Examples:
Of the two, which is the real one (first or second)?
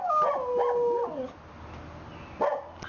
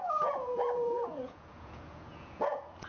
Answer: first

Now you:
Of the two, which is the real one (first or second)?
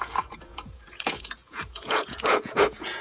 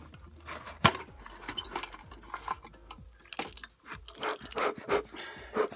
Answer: second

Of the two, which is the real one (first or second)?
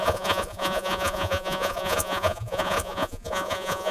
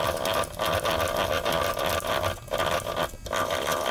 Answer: second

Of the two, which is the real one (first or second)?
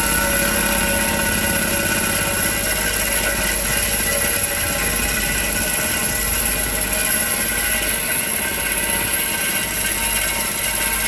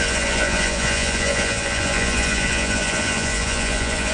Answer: first